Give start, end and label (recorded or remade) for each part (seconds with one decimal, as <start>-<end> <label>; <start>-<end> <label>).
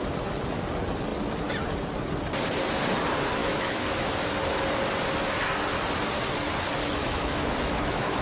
0.0-3.4 recorded; 3.4-3.9 remade; 3.9-7.0 recorded; 7.0-8.2 remade